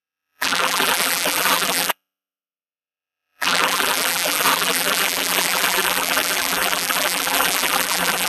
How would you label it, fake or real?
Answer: fake